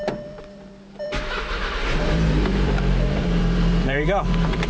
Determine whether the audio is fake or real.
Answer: fake